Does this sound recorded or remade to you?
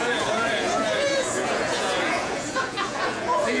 remade